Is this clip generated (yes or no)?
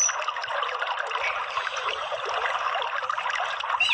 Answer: no